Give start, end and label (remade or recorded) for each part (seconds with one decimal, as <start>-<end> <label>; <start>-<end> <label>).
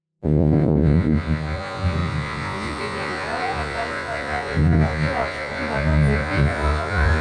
0.0-7.2 remade